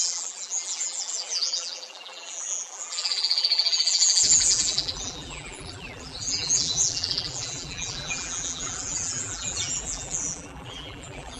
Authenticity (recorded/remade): remade